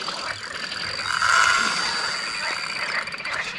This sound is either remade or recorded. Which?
recorded